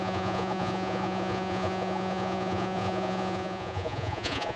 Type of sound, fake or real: fake